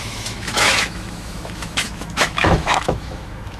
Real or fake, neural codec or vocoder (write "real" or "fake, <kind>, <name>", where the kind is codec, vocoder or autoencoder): fake, autoencoder, DAC-VAE